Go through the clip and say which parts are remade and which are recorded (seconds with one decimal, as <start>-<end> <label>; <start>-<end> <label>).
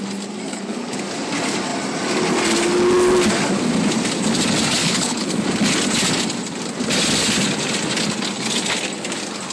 0.0-0.5 recorded; 0.5-1.0 remade; 1.0-4.8 recorded; 4.8-5.3 remade; 5.3-9.5 recorded